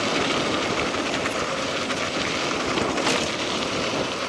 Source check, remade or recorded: recorded